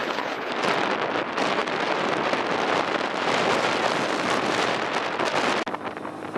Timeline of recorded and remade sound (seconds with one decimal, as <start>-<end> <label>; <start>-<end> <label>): 0.0-0.5 remade; 0.5-6.4 recorded